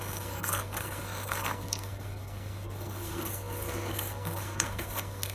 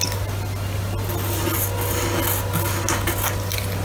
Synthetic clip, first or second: first